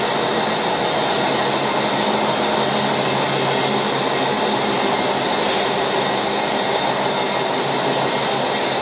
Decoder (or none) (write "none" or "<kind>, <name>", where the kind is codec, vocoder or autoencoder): none